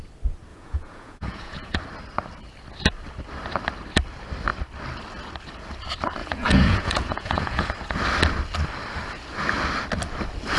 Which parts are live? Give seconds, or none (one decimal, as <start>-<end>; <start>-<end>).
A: 0.0-0.5; 1.8-6.2; 7.7-10.6